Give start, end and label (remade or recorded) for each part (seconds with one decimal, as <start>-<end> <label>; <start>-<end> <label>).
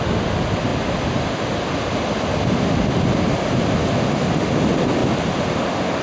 0.0-6.0 recorded